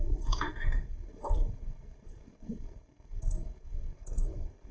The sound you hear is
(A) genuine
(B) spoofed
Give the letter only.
B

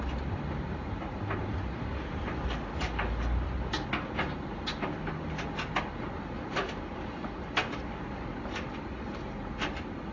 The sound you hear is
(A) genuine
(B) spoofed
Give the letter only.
A